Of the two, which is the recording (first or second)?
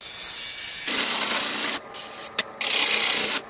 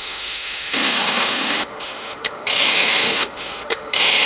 first